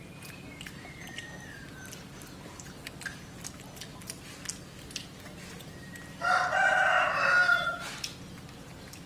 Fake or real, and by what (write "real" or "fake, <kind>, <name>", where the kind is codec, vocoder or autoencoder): real